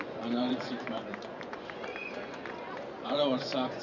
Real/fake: fake